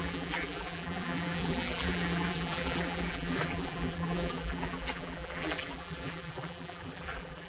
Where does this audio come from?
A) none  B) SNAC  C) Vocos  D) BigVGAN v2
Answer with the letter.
D